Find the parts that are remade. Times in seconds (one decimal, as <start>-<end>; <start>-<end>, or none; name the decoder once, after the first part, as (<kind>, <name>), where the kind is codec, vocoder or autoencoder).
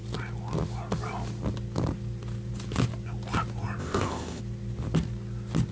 3.8-4.4 (codec, ZipCodec)